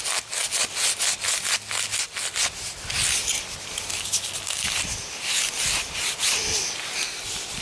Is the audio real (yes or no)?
yes